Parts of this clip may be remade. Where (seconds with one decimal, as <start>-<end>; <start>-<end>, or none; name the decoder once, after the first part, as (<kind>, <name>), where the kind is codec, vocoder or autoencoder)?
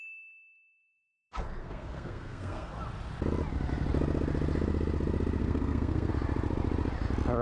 1.6-2.7 (codec, SNAC); 5.4-6.1